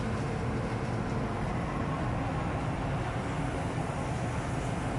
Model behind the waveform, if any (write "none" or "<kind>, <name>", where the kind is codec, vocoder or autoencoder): none